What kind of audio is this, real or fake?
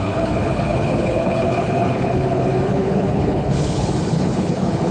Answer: fake